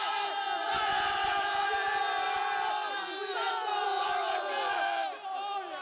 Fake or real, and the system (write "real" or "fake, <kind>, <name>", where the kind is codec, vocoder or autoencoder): fake, vocoder, BigVGAN v2